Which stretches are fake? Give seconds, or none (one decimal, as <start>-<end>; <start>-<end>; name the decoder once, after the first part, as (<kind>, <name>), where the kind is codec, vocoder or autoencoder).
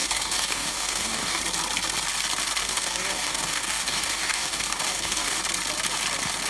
0.0-1.4 (codec, DAC); 2.6-5.4